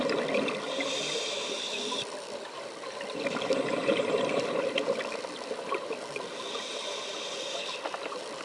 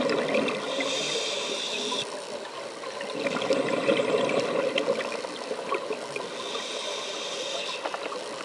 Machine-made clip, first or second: first